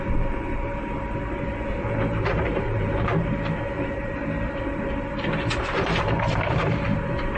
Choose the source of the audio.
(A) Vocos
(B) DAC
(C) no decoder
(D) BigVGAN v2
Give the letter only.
D